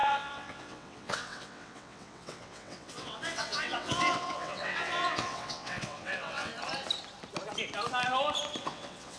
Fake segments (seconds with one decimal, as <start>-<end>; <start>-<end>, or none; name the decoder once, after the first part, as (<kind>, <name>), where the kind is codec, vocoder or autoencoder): 0.0-6.5 (vocoder, WaveNeXt); 8.6-9.2